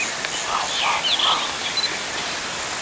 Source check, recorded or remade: recorded